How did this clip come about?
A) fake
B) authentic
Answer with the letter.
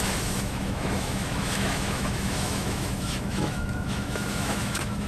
A